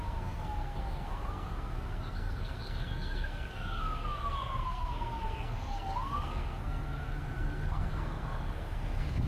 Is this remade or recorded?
remade